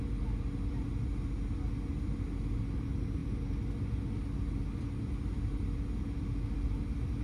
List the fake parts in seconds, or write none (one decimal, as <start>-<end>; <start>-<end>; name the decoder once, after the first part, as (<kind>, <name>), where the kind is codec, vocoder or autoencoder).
none

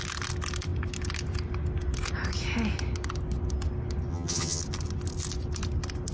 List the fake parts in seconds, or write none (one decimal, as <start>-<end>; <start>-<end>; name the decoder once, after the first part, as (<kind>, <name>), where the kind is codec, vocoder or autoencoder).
4.1-4.6 (vocoder, HiFi-GAN)

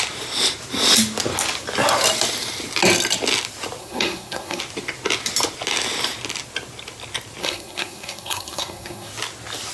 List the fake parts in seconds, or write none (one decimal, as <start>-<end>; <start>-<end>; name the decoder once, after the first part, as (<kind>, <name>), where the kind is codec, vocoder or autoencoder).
3.8-4.6 (codec, SNAC); 7.4-9.1

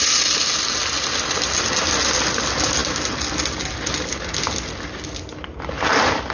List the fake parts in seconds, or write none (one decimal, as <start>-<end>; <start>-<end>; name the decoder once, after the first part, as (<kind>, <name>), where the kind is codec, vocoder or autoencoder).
none